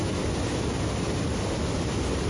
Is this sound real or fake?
real